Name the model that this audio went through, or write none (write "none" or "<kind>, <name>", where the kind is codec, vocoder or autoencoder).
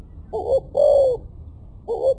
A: none